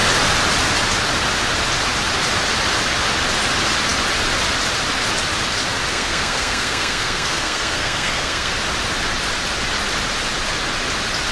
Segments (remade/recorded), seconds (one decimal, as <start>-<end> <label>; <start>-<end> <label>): 0.0-5.9 recorded; 5.9-8.5 remade; 8.5-11.3 recorded